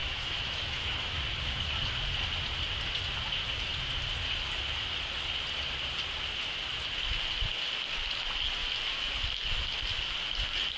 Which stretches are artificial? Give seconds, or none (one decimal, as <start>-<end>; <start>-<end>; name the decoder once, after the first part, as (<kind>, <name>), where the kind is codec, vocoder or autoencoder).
0.0-1.2 (autoencoder, DAC-VAE)